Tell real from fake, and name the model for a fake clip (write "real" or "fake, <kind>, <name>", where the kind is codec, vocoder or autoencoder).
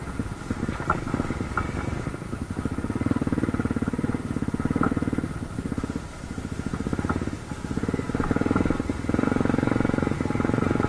real